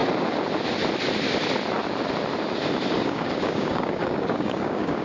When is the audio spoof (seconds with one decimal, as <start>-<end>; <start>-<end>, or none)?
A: 3.0-5.0